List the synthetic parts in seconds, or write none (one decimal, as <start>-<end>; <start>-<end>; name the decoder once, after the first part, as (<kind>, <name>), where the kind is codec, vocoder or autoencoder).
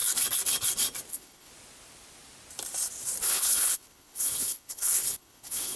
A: 1.1-1.5 (codec, HILCodec); 3.3-5.8